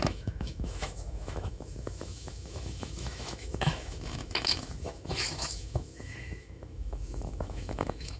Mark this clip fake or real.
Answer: fake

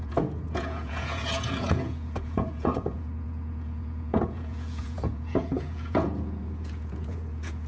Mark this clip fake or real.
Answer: fake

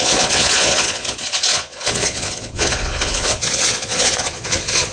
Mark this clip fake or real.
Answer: fake